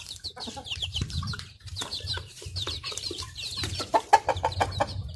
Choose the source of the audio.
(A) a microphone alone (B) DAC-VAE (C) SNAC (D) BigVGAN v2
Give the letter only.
D